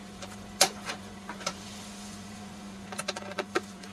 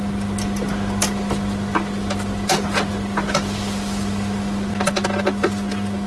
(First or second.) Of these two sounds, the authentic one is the second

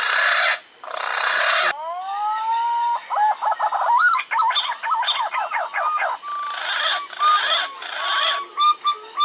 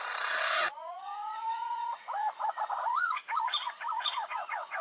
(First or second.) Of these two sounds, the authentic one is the first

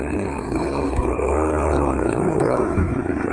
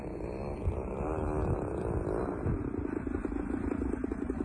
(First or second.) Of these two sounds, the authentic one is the second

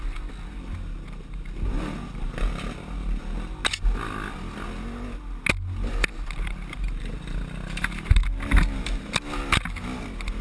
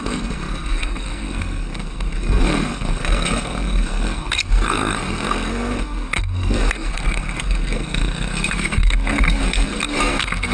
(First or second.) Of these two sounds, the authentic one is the first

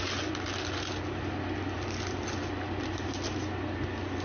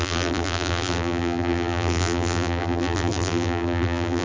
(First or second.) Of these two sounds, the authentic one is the first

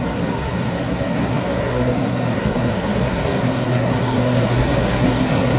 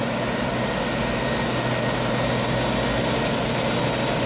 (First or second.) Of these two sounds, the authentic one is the second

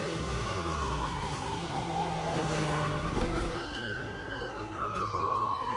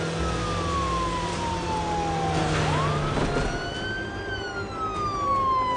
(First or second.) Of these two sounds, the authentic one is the second